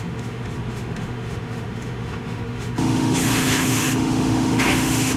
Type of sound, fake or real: fake